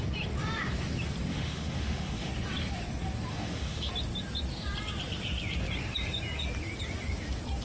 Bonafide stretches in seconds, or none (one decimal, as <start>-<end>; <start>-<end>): 0.0-1.3; 2.3-3.3; 3.9-7.6